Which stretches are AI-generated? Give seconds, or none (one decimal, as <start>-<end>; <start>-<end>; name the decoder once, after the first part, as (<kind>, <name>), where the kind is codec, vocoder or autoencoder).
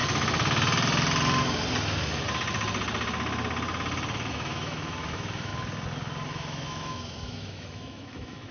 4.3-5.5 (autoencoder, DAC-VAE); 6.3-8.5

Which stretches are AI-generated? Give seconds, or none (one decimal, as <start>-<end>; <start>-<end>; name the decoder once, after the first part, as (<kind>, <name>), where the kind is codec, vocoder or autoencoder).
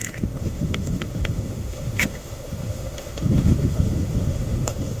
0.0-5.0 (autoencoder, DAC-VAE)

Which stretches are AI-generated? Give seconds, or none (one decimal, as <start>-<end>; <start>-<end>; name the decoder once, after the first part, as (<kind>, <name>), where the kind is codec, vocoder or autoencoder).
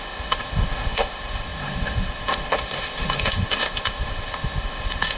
0.0-5.2 (autoencoder, DAC-VAE)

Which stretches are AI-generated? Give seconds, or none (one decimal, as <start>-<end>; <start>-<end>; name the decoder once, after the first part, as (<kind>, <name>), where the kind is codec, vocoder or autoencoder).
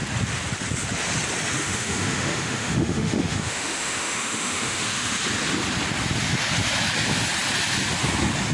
1.6-5.2 (autoencoder, DAC-VAE)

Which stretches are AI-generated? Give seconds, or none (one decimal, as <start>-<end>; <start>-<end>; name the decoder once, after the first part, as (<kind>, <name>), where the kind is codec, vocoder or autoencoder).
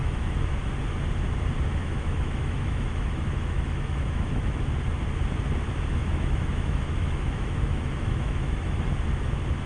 0.0-0.7 (autoencoder, DAC-VAE); 1.8-4.6; 6.0-8.9